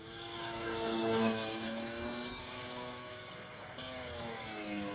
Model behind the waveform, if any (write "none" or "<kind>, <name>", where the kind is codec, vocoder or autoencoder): codec, DAC